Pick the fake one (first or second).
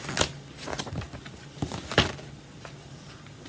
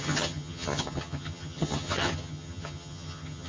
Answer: second